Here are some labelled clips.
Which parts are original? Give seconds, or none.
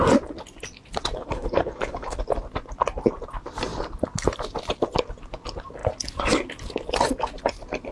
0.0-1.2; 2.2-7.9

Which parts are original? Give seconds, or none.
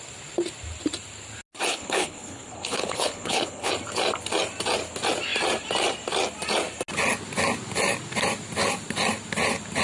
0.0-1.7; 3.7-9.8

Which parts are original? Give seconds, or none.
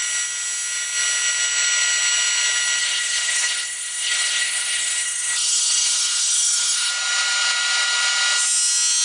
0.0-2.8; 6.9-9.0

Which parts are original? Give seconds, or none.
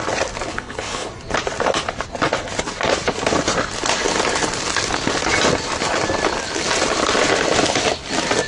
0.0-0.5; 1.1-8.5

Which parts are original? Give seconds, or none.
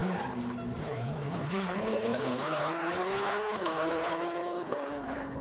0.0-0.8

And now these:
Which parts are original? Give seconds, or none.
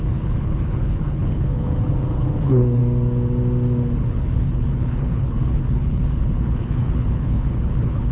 2.8-4.1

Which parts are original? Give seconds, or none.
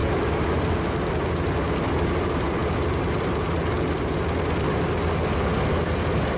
0.0-6.4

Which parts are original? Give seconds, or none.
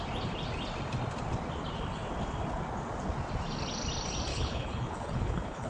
0.0-4.3